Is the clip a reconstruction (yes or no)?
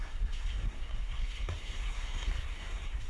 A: yes